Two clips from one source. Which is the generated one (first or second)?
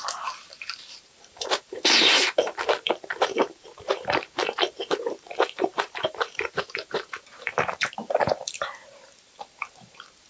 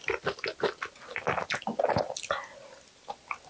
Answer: first